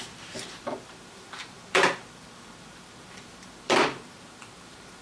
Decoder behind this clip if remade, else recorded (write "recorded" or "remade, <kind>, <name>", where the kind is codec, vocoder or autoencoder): remade, vocoder, BigVGAN v2